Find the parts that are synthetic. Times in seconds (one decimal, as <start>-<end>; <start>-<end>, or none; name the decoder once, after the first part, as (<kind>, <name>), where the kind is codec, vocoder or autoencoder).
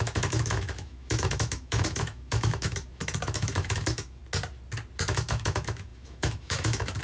0.0-4.2 (autoencoder, DAC-VAE); 5.1-7.0